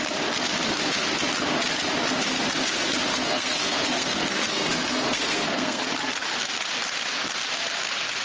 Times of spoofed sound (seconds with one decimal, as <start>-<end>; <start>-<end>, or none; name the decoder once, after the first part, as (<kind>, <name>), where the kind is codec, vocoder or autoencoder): 3.1-5.8 (codec, SNAC)